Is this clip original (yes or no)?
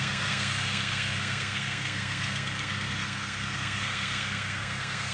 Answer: no